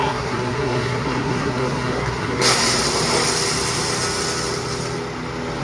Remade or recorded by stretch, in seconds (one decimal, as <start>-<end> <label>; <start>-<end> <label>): 0.0-2.6 remade; 2.6-5.6 recorded